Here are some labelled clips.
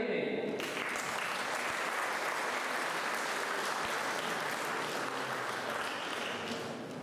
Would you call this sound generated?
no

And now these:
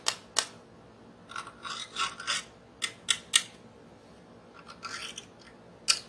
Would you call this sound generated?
no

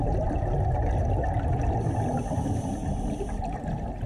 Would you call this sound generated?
no